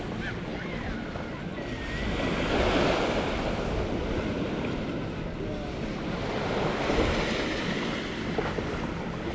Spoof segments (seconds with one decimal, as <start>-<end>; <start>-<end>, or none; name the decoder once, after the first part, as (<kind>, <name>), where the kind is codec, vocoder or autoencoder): none